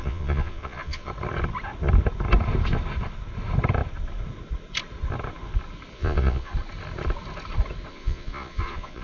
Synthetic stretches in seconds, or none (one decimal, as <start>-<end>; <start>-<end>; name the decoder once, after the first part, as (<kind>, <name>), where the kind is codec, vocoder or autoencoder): 0.0-1.1 (vocoder, Vocos); 5.9-6.5; 7.9-9.0